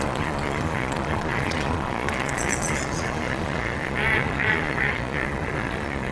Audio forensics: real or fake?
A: fake